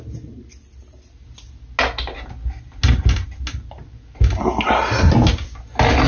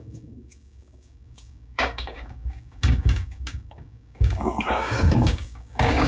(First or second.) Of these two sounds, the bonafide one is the first